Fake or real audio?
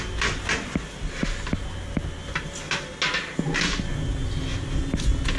real